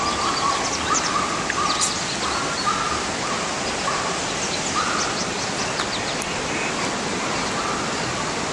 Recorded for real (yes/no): yes